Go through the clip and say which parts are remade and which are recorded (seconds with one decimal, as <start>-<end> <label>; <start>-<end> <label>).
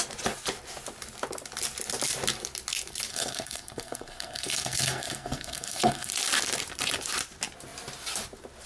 0.0-3.1 recorded; 3.1-6.1 remade; 6.1-8.7 recorded